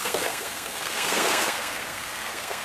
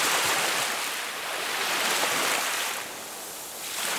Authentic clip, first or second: second